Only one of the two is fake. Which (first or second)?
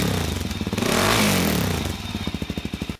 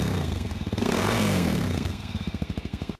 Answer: second